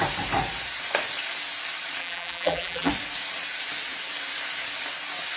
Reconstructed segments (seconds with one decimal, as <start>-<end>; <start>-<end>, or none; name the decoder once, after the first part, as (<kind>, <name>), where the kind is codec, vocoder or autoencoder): 2.0-2.9 (vocoder, BigVGAN v2)